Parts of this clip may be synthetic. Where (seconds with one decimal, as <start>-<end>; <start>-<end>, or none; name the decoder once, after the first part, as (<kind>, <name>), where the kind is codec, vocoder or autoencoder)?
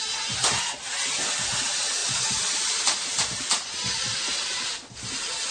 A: none